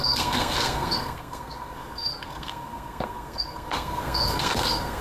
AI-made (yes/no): yes